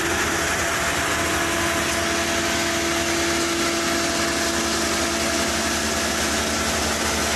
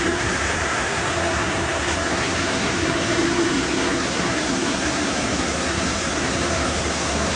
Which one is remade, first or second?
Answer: second